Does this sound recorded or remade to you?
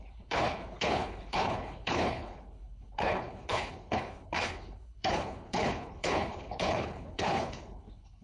remade